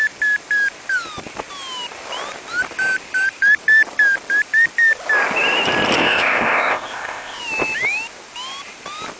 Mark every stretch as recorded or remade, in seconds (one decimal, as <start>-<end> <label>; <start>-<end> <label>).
0.0-6.0 recorded; 6.0-7.4 remade; 7.4-9.2 recorded